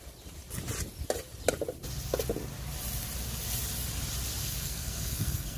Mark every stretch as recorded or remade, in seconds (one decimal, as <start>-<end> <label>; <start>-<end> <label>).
0.0-4.4 recorded; 4.4-5.6 remade